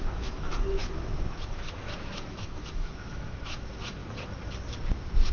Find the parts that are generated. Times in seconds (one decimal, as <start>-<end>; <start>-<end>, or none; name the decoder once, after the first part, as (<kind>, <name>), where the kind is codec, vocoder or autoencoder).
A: 0.0-4.0 (autoencoder, DAC-VAE)